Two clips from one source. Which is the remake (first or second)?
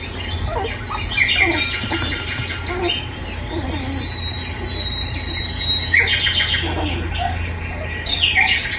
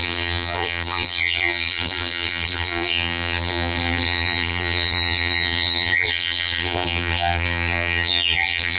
second